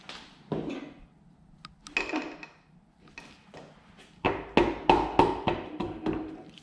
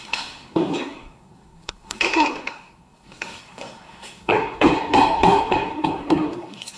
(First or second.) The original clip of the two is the first